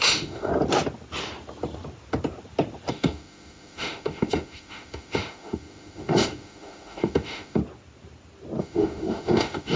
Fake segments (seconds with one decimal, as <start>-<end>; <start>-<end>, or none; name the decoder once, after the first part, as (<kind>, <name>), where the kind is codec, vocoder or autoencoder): 0.0-0.5 (autoencoder, DAC-VAE); 2.9-7.6; 8.6-9.8